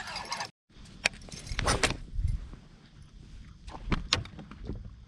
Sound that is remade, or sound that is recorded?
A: recorded